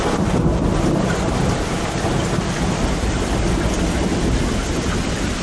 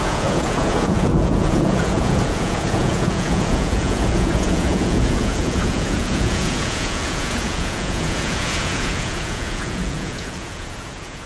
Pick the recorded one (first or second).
first